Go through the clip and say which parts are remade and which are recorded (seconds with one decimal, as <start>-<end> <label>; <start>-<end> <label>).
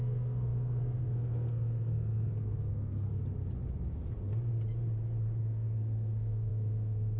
0.0-3.1 remade; 3.1-5.4 recorded; 5.4-7.2 remade